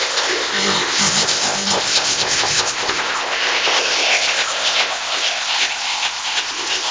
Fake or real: fake